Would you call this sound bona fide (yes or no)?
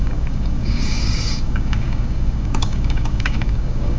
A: no